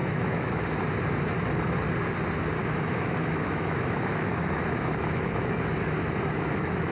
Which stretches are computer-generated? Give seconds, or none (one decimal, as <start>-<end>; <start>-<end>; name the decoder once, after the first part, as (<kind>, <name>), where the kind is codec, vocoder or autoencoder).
0.0-0.6 (autoencoder, DAC-VAE); 2.6-6.9